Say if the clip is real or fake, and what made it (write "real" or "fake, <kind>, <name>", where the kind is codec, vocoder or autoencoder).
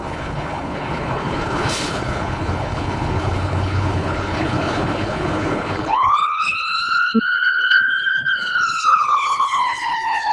fake, codec, HILCodec